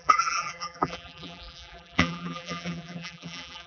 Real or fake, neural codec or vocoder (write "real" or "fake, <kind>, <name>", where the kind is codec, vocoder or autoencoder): fake, vocoder, BigVGAN v2